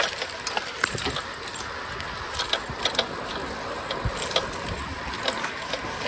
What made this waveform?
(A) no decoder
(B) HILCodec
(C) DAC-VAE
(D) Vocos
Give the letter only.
A